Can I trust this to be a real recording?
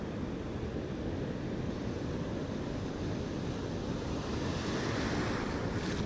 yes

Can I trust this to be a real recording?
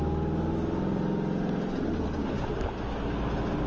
yes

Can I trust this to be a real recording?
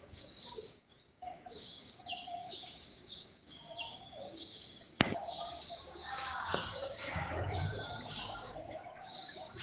no